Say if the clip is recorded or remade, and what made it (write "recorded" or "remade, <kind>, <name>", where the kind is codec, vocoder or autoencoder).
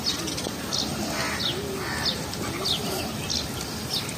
recorded